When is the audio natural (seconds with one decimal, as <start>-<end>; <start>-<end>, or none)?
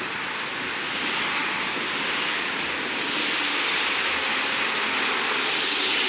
0.0-6.1